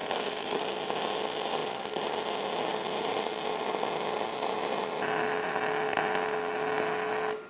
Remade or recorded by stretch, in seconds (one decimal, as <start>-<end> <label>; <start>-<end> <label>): 0.0-0.6 remade; 0.6-7.5 recorded